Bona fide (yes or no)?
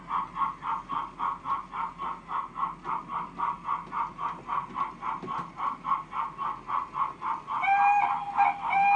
yes